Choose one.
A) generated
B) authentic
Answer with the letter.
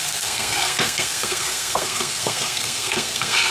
A